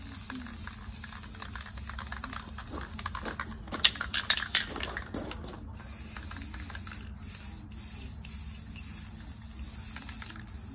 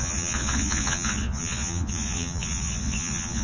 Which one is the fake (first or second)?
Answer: second